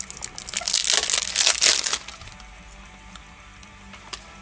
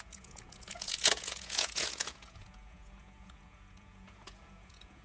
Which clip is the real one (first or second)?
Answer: first